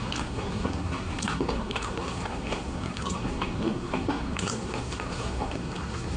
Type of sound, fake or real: fake